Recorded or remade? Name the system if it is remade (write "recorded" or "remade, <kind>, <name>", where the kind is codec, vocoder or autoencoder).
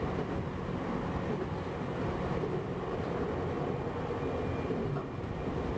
recorded